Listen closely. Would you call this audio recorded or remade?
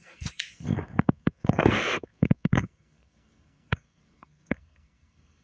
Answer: remade